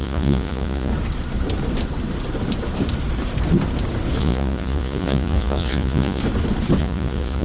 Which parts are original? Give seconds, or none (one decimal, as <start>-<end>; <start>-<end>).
0.9-4.2; 6.2-6.8